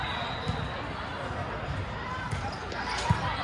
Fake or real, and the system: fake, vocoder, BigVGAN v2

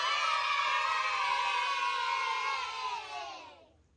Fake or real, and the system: real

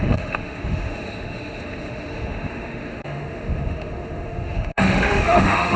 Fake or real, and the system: fake, autoencoder, DAC-VAE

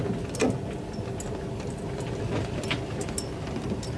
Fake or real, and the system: real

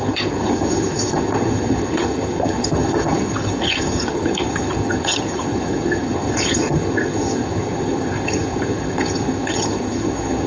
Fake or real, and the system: fake, vocoder, HiFi-GAN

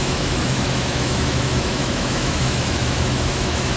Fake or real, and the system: fake, autoencoder, DAC-VAE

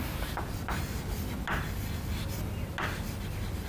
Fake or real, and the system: real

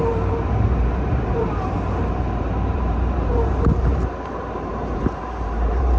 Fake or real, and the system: fake, vocoder, BigVGAN v2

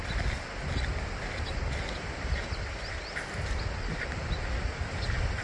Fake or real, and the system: real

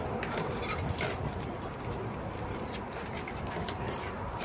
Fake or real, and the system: real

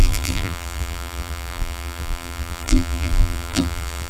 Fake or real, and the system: fake, vocoder, BigVGAN v2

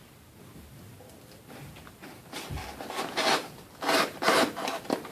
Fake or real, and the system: real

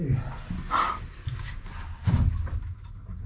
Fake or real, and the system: real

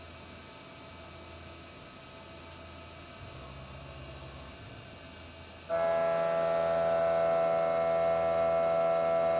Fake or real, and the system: real